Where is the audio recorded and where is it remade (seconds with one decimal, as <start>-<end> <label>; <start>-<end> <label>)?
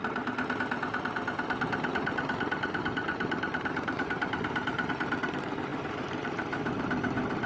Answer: 0.0-3.1 recorded; 3.1-4.9 remade; 4.9-5.7 recorded; 5.7-6.8 remade; 6.8-7.5 recorded